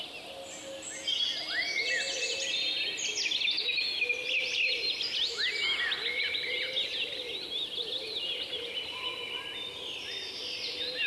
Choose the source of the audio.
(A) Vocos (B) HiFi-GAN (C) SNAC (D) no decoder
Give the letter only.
D